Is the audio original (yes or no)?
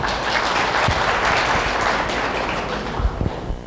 yes